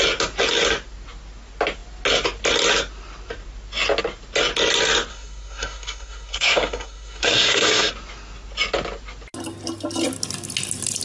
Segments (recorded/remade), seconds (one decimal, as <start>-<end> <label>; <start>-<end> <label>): 0.0-5.1 recorded; 5.1-7.9 remade; 7.9-11.0 recorded